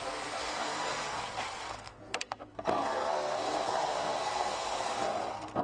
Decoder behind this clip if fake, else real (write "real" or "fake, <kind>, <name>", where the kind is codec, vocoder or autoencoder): fake, codec, SNAC